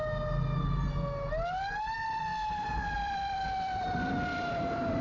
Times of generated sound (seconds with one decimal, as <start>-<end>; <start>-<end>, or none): 2.3-5.0